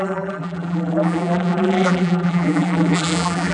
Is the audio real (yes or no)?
no